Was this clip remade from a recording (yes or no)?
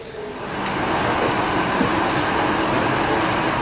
no